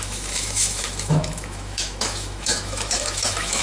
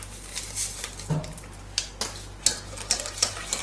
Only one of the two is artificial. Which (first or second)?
first